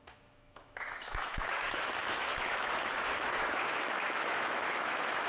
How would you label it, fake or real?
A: fake